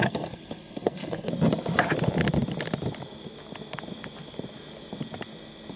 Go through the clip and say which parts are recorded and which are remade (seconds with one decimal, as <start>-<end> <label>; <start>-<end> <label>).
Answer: 0.0-1.3 remade; 1.3-5.8 recorded